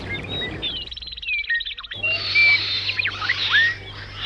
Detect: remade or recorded recorded